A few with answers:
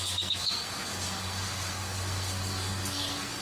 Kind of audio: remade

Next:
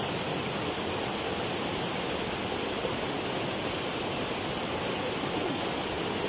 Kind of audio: recorded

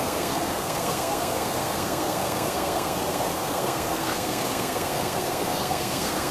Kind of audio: remade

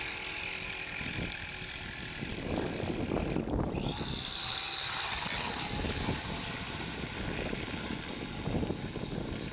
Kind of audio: recorded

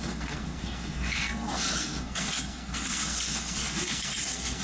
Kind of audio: remade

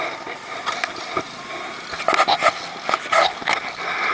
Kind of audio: recorded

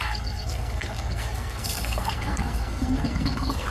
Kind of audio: remade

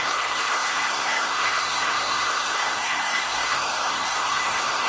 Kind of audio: remade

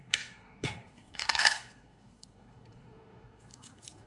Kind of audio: remade